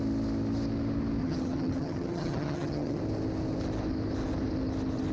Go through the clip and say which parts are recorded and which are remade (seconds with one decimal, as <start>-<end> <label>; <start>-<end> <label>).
0.0-1.2 recorded; 1.2-3.0 remade; 3.0-5.1 recorded

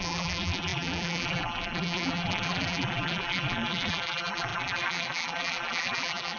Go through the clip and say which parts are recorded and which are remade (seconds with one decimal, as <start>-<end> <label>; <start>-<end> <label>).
0.0-6.4 remade

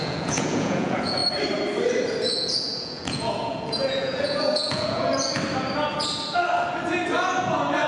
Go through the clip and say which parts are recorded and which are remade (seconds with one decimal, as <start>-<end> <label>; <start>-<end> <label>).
0.0-1.2 remade; 1.2-2.4 recorded; 2.4-5.1 remade; 5.1-7.9 recorded

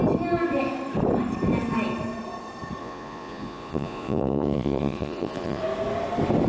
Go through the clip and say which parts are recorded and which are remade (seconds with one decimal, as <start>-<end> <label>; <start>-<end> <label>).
0.0-2.8 recorded; 2.8-5.6 remade; 5.6-6.5 recorded

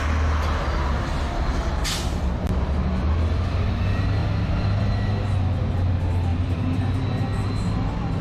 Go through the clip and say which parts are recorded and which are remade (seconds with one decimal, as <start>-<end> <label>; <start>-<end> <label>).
0.0-6.3 recorded; 6.3-6.8 remade; 6.8-8.2 recorded

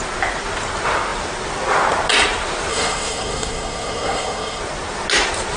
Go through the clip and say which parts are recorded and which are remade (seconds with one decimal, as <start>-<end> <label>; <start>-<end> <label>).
0.0-2.7 recorded; 2.7-4.6 remade; 4.6-5.6 recorded